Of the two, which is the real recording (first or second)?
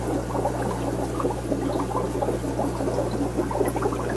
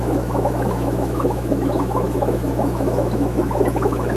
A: first